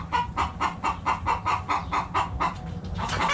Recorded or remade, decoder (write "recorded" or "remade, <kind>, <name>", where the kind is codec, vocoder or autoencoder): recorded